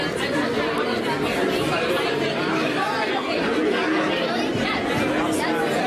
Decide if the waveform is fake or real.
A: real